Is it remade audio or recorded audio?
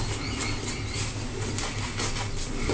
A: recorded